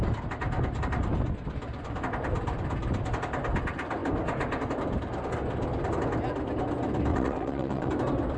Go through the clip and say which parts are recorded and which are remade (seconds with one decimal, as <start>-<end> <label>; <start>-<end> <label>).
0.0-7.1 recorded; 7.1-7.9 remade; 7.9-8.4 recorded